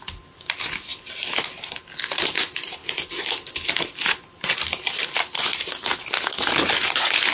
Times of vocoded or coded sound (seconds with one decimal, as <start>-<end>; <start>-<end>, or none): none